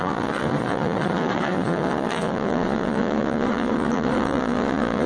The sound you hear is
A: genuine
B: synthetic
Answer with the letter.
B